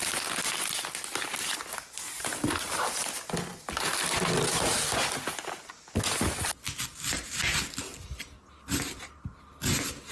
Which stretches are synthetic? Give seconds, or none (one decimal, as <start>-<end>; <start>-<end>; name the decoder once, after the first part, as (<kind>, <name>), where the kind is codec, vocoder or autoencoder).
none